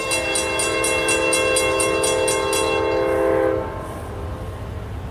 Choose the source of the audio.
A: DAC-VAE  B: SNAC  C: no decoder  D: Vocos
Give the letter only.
C